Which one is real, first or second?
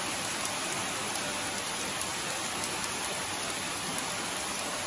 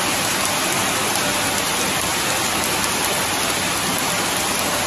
second